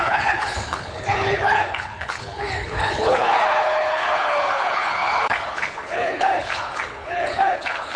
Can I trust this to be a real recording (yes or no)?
no